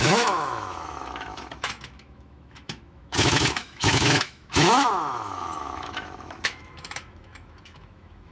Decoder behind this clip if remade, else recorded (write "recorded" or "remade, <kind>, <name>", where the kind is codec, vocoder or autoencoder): remade, autoencoder, DAC-VAE